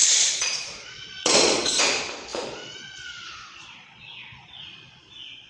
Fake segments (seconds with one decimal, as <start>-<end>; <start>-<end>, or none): 0.0-1.8; 2.3-5.5